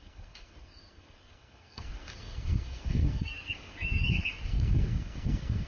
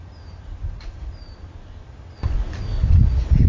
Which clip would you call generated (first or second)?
first